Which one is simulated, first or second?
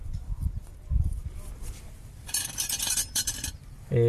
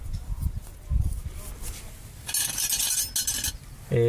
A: first